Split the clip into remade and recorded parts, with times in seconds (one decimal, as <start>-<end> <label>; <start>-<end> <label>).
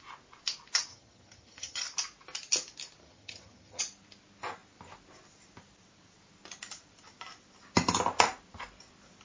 0.0-0.9 recorded; 0.9-1.8 remade; 1.8-3.0 recorded; 3.0-3.8 remade; 3.8-9.2 recorded